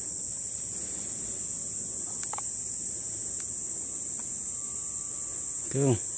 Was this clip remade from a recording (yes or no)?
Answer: no